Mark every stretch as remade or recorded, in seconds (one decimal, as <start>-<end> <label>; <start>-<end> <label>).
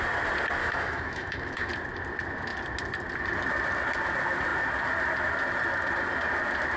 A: 0.0-0.6 recorded; 0.6-1.7 remade; 1.7-6.8 recorded